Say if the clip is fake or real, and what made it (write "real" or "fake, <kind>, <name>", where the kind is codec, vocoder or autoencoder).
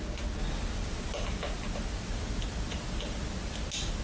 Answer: real